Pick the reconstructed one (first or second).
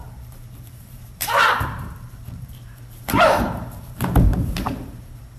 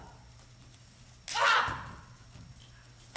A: first